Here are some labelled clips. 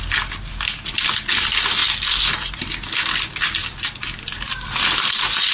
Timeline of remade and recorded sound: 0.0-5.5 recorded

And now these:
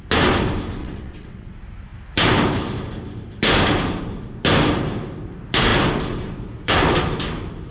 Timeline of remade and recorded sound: 0.0-0.8 recorded; 0.8-1.5 remade; 1.5-7.7 recorded

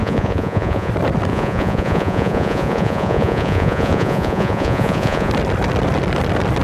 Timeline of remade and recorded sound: 0.0-0.9 remade; 0.9-1.3 recorded; 1.3-5.3 remade; 5.3-6.6 recorded

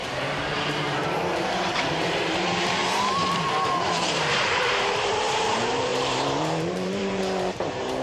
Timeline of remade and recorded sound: 0.0-2.8 remade; 2.8-3.3 recorded; 3.3-8.0 remade

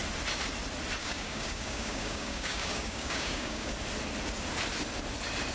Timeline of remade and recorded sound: 0.0-1.0 recorded; 1.0-3.7 remade; 3.7-5.5 recorded

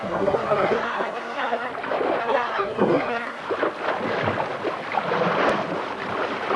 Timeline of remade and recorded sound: 0.0-1.7 remade; 1.7-2.2 recorded; 2.2-3.4 remade; 3.4-6.6 recorded

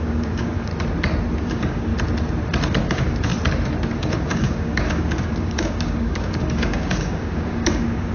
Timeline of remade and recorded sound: 0.0-0.7 remade; 0.7-1.4 recorded; 1.4-1.9 remade; 1.9-2.8 recorded; 2.8-3.3 remade; 3.3-4.0 recorded; 4.0-8.1 remade

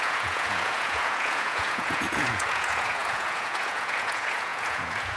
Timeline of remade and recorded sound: 0.0-5.2 remade